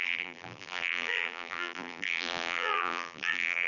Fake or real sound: fake